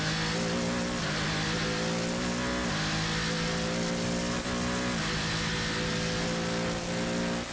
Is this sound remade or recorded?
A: recorded